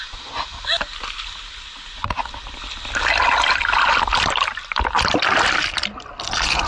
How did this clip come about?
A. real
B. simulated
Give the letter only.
A